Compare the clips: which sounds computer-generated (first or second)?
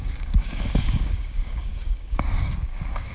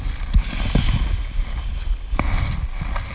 first